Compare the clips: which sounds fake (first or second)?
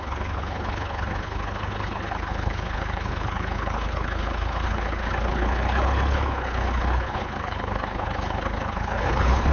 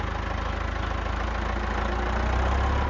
first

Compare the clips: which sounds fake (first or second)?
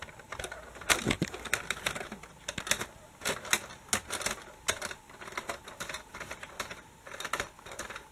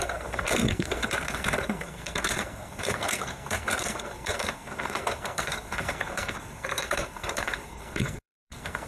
second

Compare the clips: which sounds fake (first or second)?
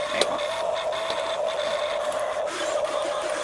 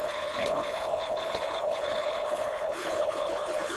second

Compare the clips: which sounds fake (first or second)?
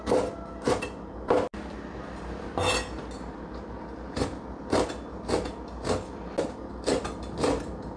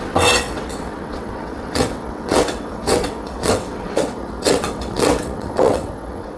second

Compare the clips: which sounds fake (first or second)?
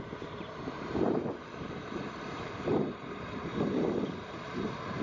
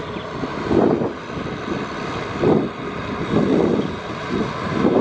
first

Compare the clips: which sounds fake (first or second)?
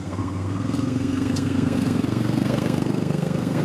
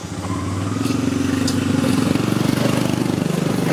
first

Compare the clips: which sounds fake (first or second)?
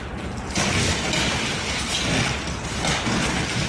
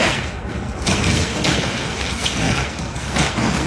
second